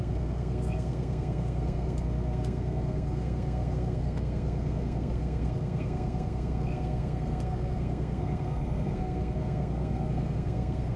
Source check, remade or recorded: remade